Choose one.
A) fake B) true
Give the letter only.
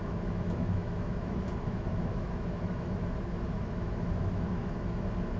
A